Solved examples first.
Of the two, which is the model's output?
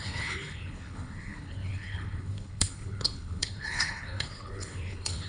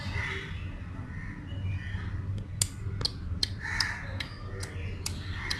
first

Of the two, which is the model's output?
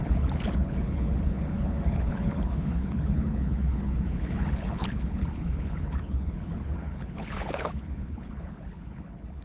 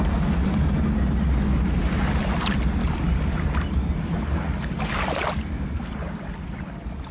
first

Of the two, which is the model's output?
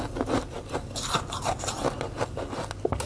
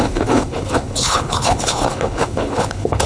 second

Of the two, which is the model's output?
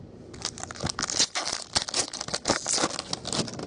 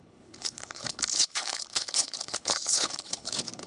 second